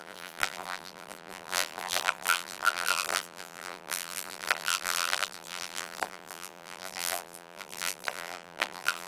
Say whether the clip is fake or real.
fake